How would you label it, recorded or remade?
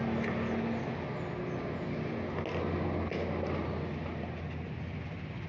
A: recorded